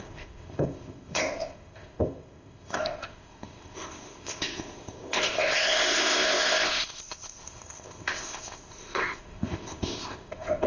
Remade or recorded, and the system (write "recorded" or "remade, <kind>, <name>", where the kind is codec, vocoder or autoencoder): remade, codec, ZipCodec